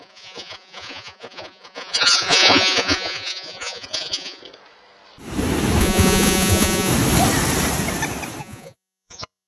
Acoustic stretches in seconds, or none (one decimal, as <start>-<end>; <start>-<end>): 4.4-5.8; 6.9-8.4